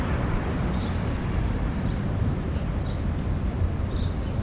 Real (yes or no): yes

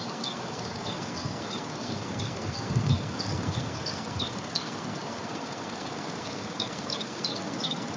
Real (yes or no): no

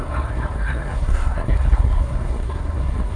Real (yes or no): no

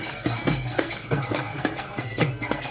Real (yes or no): no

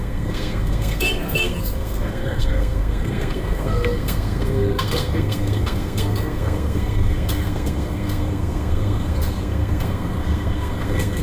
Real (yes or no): no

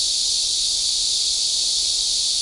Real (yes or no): yes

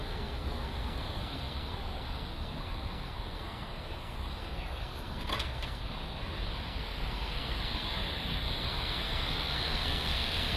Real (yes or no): no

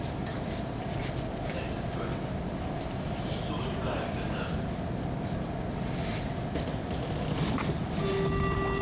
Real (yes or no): yes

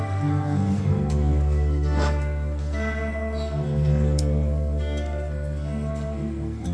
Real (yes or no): no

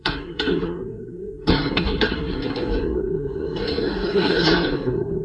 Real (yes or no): no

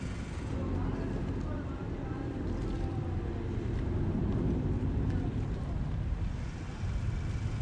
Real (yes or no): yes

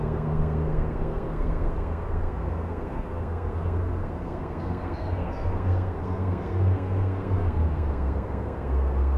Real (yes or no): no